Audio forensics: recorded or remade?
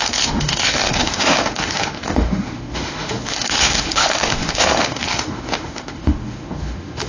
remade